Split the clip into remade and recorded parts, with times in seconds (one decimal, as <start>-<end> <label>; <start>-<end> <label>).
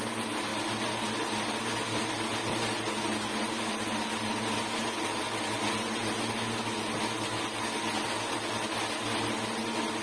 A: 0.0-10.0 recorded